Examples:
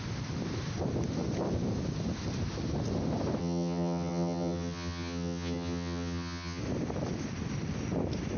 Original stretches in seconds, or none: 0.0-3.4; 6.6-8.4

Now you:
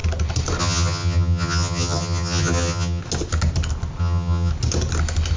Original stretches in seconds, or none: 0.0-0.6; 3.0-4.0; 4.5-5.4

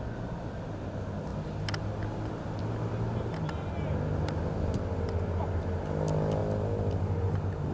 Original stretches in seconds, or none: 0.0-7.7

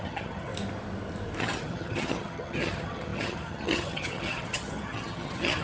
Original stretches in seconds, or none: 0.5-1.4

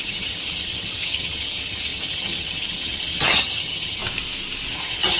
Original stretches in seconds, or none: 4.0-4.7

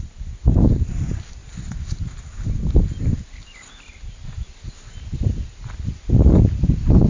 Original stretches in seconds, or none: 0.0-7.1